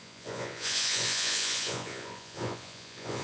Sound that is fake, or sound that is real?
fake